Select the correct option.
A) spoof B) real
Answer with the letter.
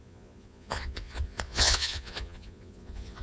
A